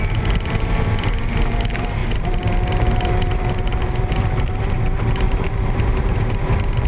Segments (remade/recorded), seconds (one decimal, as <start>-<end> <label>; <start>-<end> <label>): 0.0-6.9 remade

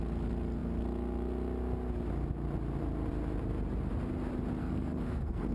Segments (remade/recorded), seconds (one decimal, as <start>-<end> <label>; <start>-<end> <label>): 0.0-4.6 recorded; 4.6-5.5 remade

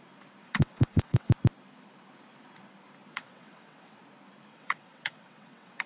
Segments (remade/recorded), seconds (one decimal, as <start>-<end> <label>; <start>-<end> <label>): 0.0-0.4 recorded; 0.4-1.3 remade; 1.3-3.1 recorded; 3.1-4.0 remade; 4.0-4.5 recorded; 4.5-5.9 remade

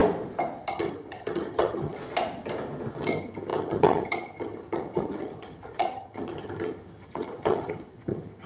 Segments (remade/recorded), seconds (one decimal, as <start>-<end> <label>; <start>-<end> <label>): 0.0-0.7 recorded; 0.7-2.0 remade; 2.0-2.9 recorded; 2.9-8.5 remade

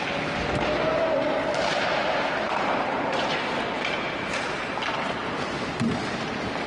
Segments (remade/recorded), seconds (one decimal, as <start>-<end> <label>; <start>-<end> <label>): 0.0-0.7 recorded; 0.7-4.7 remade; 4.7-5.2 recorded; 5.2-6.7 remade

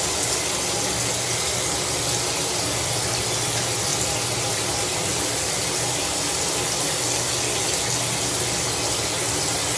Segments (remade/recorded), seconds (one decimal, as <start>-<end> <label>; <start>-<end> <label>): 0.0-9.8 recorded

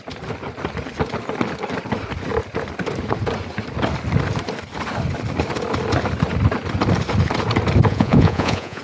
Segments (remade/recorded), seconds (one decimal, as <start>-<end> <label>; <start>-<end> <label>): 0.0-7.9 recorded; 7.9-8.8 remade

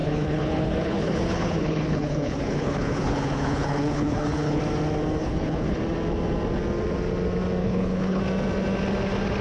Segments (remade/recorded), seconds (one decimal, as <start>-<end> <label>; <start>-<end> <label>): 0.0-4.6 remade; 4.6-5.2 recorded; 5.2-5.8 remade; 5.8-7.6 recorded; 7.6-8.2 remade; 8.2-9.4 recorded